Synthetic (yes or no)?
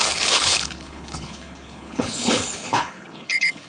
yes